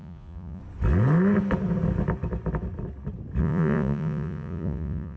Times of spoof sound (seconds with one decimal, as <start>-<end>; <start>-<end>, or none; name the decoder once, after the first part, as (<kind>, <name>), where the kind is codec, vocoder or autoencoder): 0.0-0.6 (vocoder, Vocos); 3.4-5.2

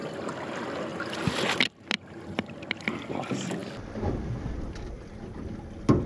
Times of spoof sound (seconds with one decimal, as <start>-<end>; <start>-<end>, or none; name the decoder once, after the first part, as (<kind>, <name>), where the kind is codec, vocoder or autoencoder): none

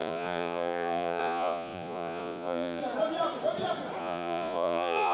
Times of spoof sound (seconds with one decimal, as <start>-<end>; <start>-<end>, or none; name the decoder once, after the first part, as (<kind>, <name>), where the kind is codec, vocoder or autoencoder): 0.0-2.8 (vocoder, Vocos); 4.0-5.1

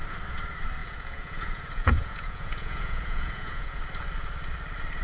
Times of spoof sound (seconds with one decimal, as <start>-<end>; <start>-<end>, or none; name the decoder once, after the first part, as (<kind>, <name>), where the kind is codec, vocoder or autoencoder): 0.8-3.8 (vocoder, Vocos)